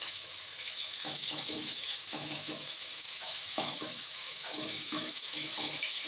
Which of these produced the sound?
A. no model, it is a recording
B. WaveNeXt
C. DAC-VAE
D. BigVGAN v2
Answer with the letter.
C